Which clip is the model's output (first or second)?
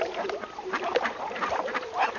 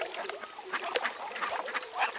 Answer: first